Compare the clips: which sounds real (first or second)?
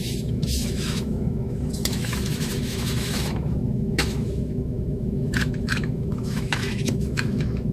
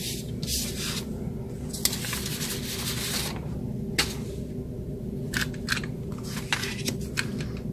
second